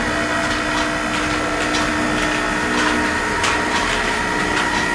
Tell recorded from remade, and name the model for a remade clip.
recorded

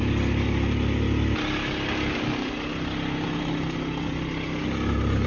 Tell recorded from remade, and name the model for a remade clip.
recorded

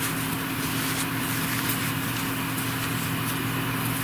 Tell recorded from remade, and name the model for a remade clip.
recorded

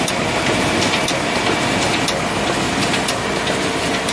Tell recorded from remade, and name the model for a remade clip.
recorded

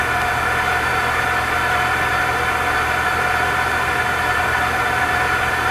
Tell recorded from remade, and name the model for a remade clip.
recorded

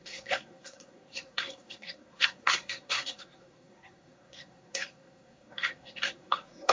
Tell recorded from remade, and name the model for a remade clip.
remade, codec, SNAC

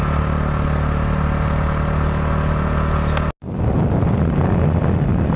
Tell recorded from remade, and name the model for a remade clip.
recorded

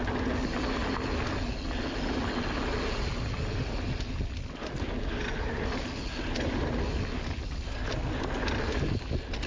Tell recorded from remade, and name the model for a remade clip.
recorded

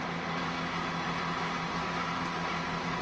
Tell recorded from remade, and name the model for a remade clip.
recorded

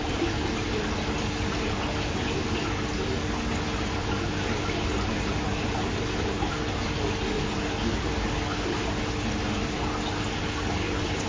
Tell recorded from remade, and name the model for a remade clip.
recorded